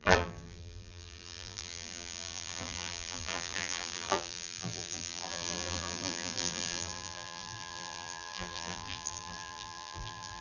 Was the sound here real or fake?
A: fake